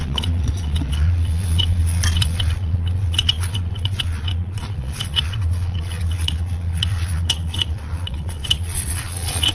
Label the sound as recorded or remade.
remade